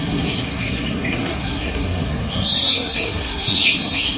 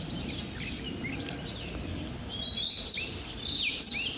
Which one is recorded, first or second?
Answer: second